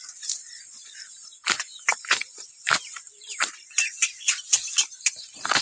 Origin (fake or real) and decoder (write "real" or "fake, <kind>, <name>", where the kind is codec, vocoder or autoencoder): fake, vocoder, BigVGAN v2